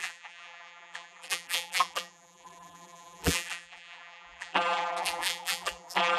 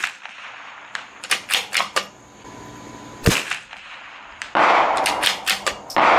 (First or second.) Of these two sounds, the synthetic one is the first